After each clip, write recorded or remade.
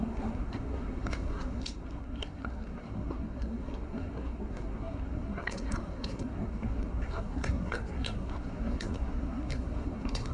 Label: remade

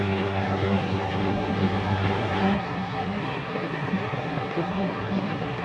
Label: remade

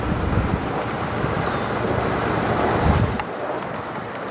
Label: recorded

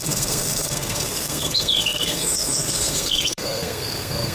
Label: remade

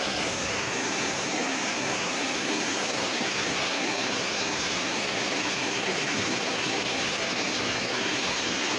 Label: remade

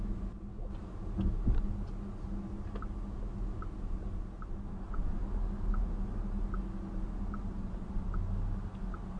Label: recorded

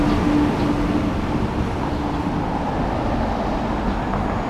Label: recorded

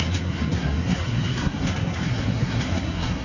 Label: remade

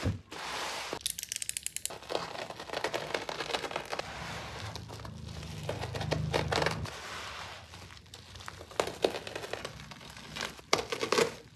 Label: recorded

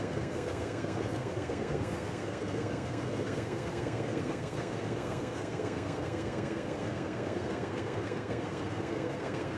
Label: remade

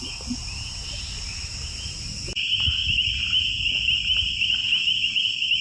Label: recorded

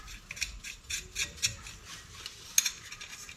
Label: recorded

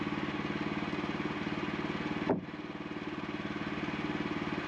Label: recorded